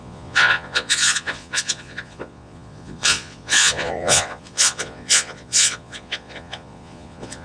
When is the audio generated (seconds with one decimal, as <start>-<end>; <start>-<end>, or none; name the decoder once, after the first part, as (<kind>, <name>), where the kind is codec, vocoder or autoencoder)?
0.0-7.4 (vocoder, Vocos)